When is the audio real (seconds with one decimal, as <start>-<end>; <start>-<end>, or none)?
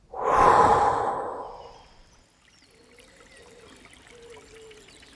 0.0-5.1